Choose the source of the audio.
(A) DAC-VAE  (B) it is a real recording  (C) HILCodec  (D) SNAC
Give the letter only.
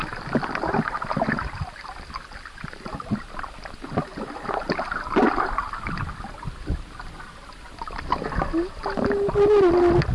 B